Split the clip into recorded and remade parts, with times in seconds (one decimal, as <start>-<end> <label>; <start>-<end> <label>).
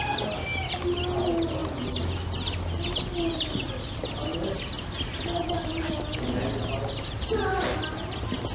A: 0.0-8.5 recorded